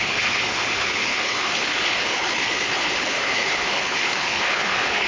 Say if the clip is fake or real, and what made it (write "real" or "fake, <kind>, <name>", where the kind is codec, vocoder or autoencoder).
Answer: fake, codec, HILCodec